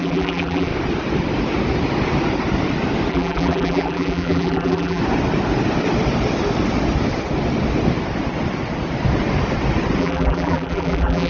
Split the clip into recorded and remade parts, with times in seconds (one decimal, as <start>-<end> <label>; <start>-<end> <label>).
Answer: 0.0-0.7 remade; 0.7-3.1 recorded; 3.1-5.0 remade; 5.0-10.0 recorded; 10.0-11.3 remade